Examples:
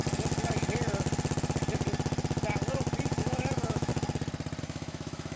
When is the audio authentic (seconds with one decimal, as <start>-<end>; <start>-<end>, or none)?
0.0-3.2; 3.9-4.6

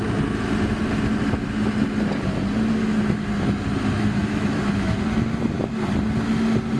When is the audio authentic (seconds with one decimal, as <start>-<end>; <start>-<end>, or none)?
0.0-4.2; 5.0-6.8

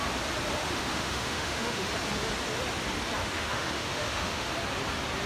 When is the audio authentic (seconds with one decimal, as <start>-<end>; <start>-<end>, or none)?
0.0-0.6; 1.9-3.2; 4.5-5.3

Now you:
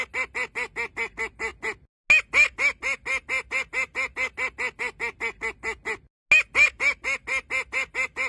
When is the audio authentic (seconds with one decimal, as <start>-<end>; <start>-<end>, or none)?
0.0-8.3

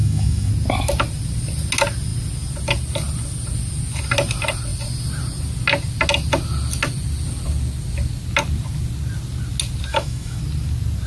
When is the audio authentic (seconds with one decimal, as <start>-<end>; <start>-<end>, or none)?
0.5-9.9; 10.4-11.1